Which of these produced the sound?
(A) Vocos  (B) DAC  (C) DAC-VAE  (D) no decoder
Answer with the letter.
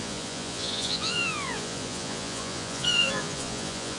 A